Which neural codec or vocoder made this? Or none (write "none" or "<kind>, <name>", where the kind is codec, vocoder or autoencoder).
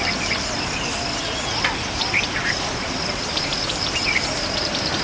none